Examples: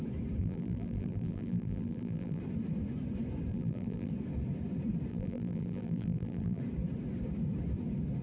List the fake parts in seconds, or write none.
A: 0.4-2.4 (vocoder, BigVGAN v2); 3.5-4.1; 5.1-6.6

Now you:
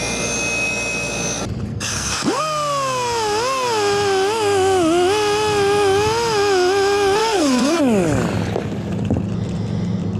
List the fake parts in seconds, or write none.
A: 1.7-2.4 (codec, SNAC); 7.2-7.8

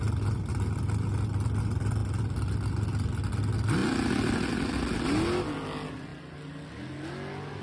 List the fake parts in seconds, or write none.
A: none